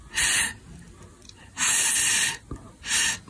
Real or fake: real